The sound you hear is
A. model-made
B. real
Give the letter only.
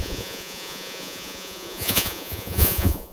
A